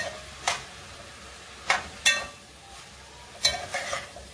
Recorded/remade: recorded